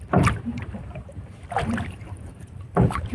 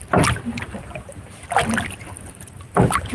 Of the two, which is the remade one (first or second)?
first